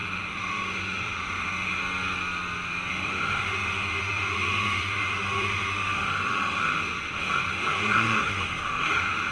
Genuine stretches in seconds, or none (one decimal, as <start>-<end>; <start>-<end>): 1.8-2.9